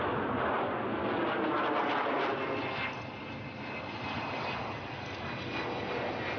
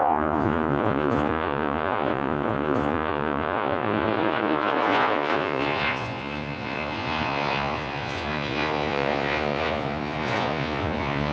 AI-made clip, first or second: second